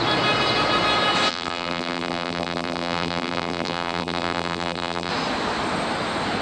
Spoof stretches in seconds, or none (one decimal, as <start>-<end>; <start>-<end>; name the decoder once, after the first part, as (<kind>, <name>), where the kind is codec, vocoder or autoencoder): 1.3-5.1 (vocoder, BigVGAN v2)